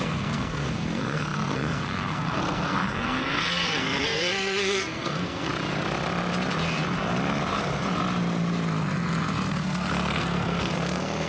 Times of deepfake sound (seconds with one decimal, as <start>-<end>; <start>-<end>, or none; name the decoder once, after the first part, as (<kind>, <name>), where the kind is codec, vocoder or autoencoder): 0.0-5.5 (codec, SNAC); 9.5-11.3